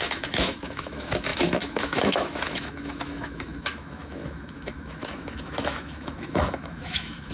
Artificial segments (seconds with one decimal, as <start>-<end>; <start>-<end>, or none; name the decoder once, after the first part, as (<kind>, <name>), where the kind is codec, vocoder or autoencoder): 0.0-7.3 (autoencoder, DAC-VAE)